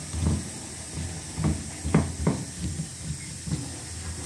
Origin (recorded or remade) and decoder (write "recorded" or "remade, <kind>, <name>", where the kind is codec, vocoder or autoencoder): recorded